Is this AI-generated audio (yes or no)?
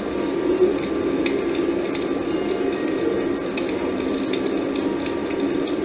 no